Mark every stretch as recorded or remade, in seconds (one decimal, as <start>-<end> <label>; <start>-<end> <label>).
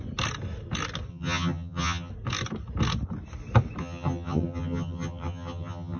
0.0-1.1 recorded; 1.1-2.1 remade; 2.1-3.8 recorded; 3.8-6.0 remade